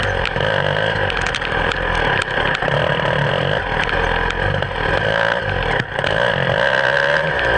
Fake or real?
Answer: real